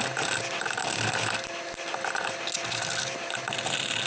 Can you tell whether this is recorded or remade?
recorded